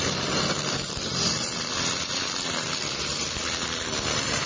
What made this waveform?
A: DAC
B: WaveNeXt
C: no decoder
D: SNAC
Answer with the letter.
C